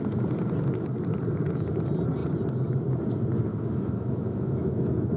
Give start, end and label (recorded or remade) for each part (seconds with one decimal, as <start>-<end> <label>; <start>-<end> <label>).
0.0-3.5 recorded; 3.5-5.2 remade